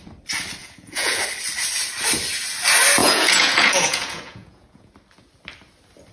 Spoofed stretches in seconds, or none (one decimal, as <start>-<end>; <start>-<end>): 0.6-1.2; 3.0-4.9